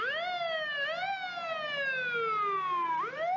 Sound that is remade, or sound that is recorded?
recorded